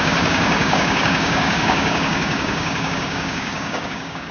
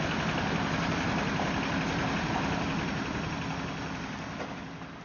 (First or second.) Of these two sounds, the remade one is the first